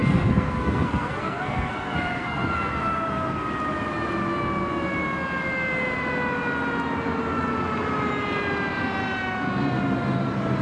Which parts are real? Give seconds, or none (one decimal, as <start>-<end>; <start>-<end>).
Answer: 3.5-10.6